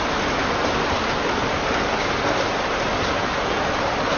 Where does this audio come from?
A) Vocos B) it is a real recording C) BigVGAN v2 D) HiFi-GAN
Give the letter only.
B